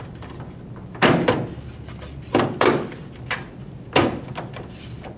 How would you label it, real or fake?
real